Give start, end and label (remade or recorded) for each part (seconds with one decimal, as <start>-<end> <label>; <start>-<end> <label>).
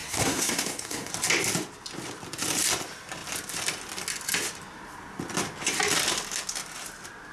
0.0-1.1 remade; 1.1-7.3 recorded